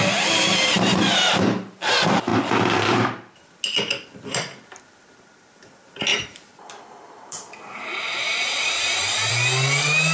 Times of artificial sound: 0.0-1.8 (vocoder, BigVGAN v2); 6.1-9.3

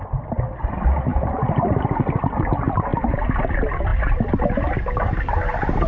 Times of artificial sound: none

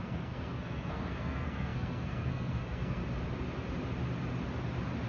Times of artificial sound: 0.0-3.0 (codec, SNAC)

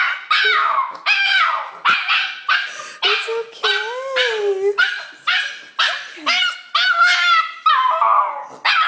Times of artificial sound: 0.6-1.4 (autoencoder, DAC-VAE)

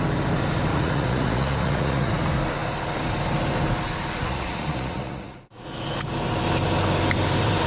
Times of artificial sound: 0.7-2.1 (vocoder, Vocos); 4.2-5.7

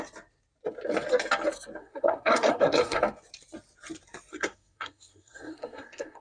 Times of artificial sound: 1.8-3.0 (codec, SNAC); 4.3-6.2

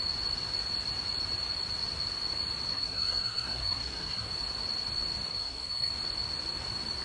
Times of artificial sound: 2.7-4.3 (codec, SNAC); 5.3-5.9

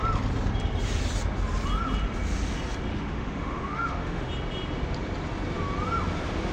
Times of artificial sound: 2.9-4.3 (autoencoder, DAC-VAE)